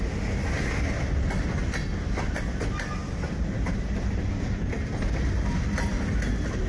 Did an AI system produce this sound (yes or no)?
no